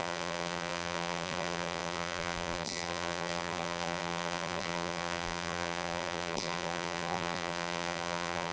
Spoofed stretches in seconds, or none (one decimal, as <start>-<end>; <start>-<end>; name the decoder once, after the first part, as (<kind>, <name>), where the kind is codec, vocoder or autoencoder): 0.0-8.5 (vocoder, BigVGAN v2)

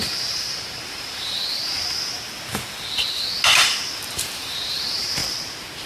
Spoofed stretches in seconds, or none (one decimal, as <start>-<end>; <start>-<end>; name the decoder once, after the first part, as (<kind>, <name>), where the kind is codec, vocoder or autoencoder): 0.0-1.6 (vocoder, BigVGAN v2); 4.0-5.2